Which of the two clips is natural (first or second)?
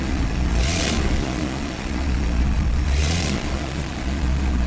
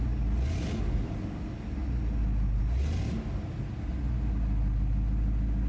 second